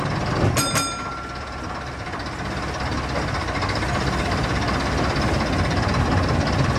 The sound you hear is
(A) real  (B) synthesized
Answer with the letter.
A